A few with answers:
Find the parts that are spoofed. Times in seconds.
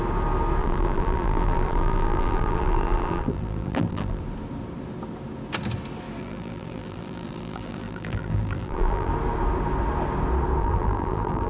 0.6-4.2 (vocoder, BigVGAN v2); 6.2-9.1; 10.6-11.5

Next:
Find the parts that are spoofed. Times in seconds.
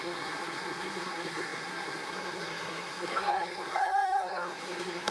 0.0-5.1 (codec, SNAC)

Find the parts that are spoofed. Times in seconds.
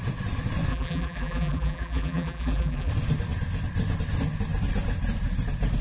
0.7-2.9 (vocoder, BigVGAN v2)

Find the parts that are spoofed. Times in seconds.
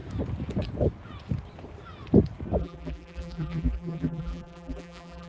2.6-5.3 (vocoder, BigVGAN v2)